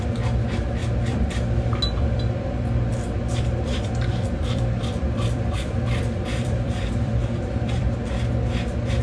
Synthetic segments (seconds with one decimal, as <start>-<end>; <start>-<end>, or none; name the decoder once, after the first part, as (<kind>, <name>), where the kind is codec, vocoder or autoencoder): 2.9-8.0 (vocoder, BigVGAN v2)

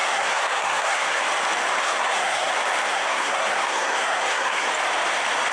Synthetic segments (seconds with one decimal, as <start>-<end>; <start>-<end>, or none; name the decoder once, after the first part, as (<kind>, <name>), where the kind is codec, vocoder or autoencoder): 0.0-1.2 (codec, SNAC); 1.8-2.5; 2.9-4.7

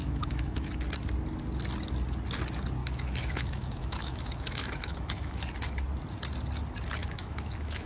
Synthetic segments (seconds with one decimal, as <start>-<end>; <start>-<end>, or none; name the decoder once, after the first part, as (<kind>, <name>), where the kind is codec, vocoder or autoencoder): 0.0-0.7 (autoencoder, DAC-VAE); 2.8-5.4; 7.0-7.9

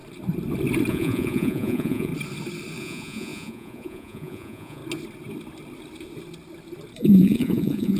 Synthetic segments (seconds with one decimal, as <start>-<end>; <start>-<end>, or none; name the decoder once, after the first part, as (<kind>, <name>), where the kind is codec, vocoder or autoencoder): 0.9-2.1 (vocoder, Vocos); 2.8-4.8; 7.0-8.0

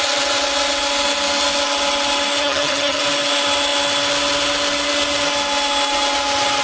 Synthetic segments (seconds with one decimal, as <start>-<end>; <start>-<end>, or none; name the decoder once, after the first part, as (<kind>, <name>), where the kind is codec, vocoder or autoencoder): 2.4-3.0 (vocoder, HiFi-GAN)